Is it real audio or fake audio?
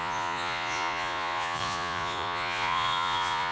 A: fake